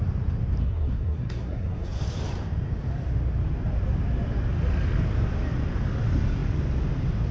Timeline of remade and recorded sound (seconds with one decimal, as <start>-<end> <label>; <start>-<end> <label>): 0.0-0.6 recorded; 0.6-2.0 remade; 2.0-7.3 recorded